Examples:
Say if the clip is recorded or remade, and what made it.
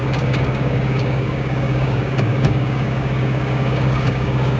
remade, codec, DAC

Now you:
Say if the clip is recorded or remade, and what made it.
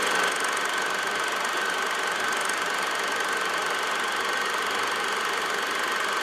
recorded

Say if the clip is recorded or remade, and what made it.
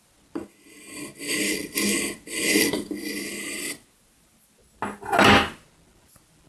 recorded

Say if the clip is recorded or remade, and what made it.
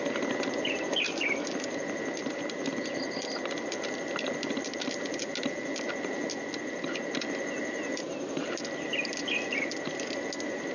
recorded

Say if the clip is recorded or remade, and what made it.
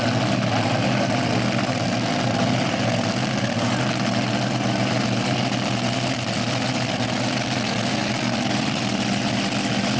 recorded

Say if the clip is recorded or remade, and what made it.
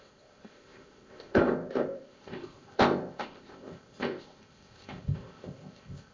remade, codec, ZipCodec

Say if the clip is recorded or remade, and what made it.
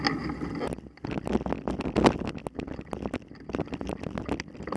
recorded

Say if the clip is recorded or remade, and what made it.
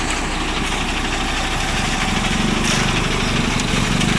recorded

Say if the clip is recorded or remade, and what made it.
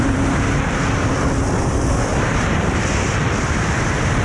remade, vocoder, BigVGAN v2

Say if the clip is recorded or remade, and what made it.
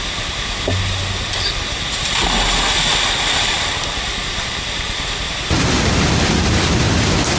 recorded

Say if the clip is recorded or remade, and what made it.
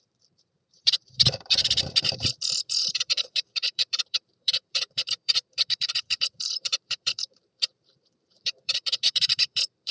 remade, vocoder, BigVGAN v2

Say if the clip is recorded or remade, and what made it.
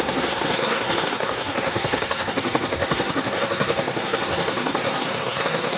remade, codec, SNAC